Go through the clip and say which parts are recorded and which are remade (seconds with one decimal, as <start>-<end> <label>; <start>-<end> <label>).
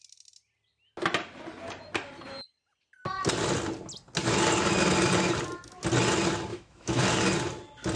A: 0.0-6.5 recorded; 6.5-7.0 remade; 7.0-8.0 recorded